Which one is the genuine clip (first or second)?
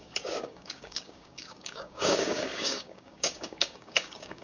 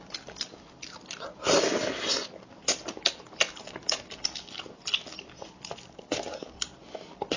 second